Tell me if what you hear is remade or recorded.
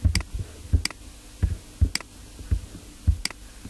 recorded